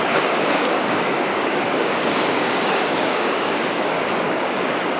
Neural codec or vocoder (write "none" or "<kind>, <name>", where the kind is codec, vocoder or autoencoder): codec, DAC